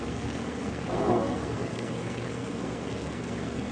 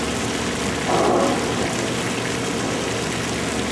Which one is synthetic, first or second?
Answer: first